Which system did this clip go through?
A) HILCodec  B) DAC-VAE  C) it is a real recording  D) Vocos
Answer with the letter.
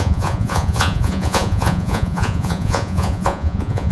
D